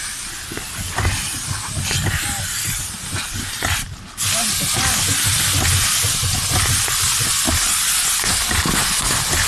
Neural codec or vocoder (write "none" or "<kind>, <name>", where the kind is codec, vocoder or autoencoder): none